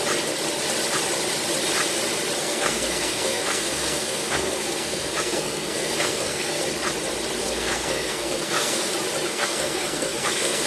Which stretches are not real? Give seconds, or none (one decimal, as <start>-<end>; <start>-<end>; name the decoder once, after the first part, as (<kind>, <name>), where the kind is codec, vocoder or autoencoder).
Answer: 2.4-6.6 (codec, SNAC); 7.4-8.9; 9.3-10.7